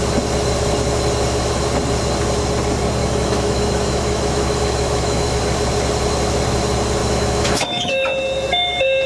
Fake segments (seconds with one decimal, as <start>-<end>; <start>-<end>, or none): 3.0-5.4; 7.0-7.9